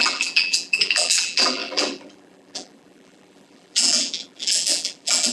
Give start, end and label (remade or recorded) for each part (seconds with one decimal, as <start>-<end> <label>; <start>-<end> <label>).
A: 0.0-5.3 remade